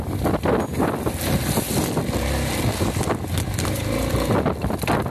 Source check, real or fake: real